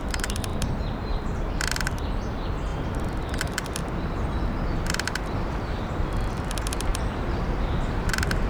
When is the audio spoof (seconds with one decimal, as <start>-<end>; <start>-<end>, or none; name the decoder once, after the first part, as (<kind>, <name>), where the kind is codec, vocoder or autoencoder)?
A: 0.0-6.9 (vocoder, BigVGAN v2); 7.7-8.5